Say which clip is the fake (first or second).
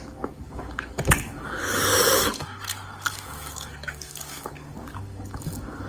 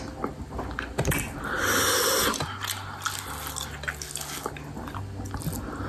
first